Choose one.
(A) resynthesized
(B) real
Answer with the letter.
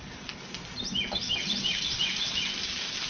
B